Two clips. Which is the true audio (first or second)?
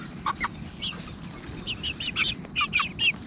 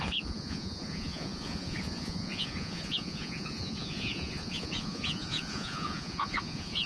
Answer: first